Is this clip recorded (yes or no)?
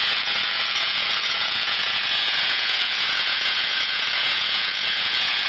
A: no